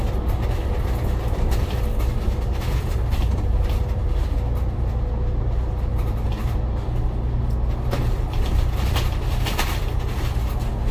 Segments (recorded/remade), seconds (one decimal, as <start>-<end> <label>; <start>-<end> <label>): 0.0-5.9 recorded; 5.9-6.6 remade; 6.6-10.9 recorded